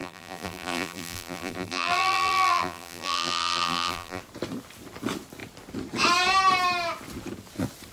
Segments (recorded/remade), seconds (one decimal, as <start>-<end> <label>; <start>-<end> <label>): 0.0-4.2 remade; 4.2-7.9 recorded